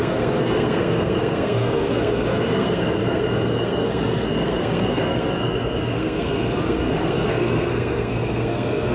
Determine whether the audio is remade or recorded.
remade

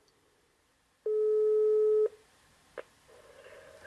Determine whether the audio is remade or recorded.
recorded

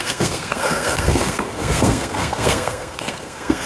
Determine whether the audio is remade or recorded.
remade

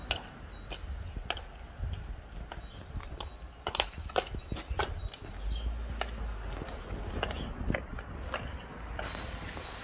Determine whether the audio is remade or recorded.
recorded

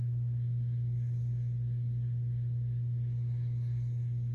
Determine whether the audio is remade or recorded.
recorded